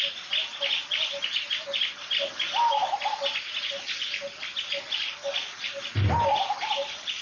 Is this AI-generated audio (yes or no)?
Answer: no